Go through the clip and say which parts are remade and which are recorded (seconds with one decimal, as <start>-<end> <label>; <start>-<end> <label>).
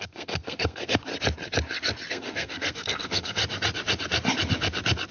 0.0-1.1 remade; 1.1-2.1 recorded; 2.1-3.4 remade; 3.4-5.1 recorded